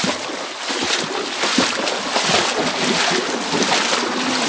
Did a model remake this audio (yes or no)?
no